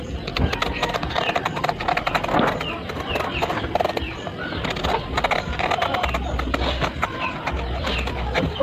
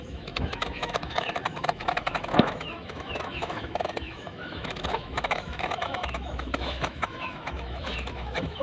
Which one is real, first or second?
first